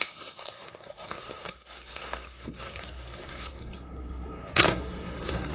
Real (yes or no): no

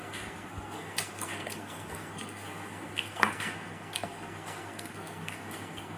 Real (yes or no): no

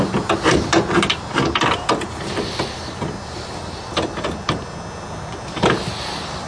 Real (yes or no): yes